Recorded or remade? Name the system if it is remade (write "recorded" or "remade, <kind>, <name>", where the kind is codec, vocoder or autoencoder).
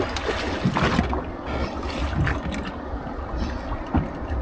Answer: recorded